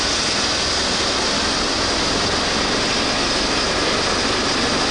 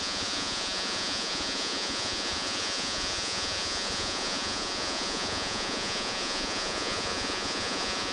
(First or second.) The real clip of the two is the first